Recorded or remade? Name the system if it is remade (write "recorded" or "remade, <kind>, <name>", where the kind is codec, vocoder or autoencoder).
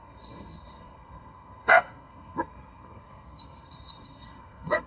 remade, codec, SNAC